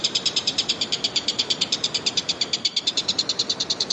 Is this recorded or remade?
remade